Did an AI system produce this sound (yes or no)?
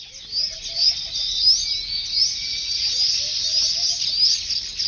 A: no